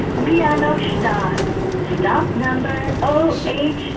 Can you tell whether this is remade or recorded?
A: remade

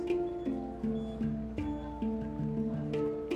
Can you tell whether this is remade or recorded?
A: recorded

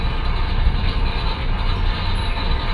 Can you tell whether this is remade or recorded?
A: recorded